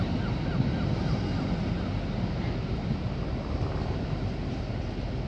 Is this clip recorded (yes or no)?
yes